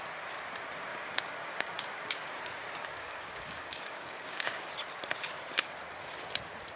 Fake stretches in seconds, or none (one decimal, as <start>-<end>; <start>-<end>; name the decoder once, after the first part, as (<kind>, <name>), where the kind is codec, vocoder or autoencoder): 0.9-2.3 (codec, DAC); 2.8-4.7